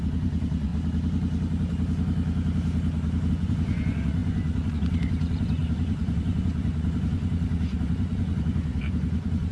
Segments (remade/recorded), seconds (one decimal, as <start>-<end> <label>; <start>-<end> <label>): 0.0-0.7 remade; 0.7-3.3 recorded; 3.3-9.5 remade